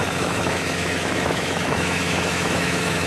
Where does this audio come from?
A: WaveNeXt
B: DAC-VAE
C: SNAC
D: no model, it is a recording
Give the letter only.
B